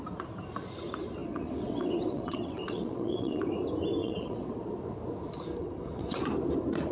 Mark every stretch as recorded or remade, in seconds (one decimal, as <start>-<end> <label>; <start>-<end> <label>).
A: 0.0-1.2 recorded; 1.2-3.4 remade; 3.4-4.0 recorded; 4.0-4.5 remade; 4.5-5.6 recorded; 5.6-6.2 remade; 6.2-6.9 recorded